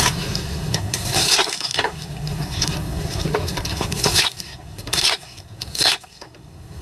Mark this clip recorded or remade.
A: remade